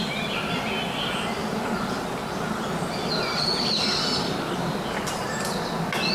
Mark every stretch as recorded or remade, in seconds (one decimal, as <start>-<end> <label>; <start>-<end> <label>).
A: 0.0-6.1 recorded